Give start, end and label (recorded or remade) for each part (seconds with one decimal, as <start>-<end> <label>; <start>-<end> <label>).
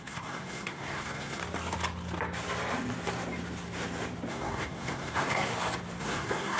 0.0-1.4 remade; 1.4-4.3 recorded; 4.3-5.5 remade; 5.5-6.0 recorded; 6.0-6.6 remade